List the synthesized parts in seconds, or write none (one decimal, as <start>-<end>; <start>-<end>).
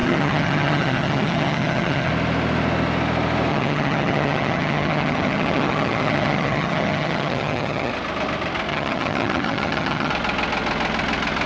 0.0-2.1; 3.5-7.9; 8.7-10.1